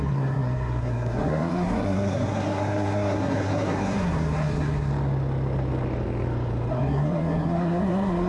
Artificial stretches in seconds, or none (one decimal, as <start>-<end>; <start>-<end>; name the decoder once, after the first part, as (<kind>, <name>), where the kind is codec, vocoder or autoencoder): 0.0-4.9 (codec, SNAC); 6.7-8.3